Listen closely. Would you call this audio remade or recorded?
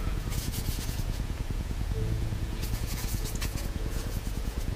remade